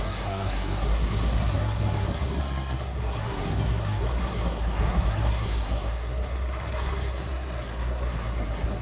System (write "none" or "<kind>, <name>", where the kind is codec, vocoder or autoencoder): codec, SNAC